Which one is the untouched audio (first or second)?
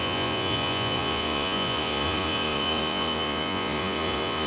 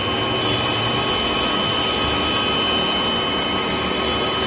second